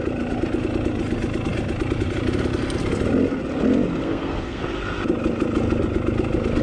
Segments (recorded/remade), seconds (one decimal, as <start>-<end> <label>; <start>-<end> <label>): 0.0-4.0 recorded; 4.0-4.6 remade; 4.6-6.6 recorded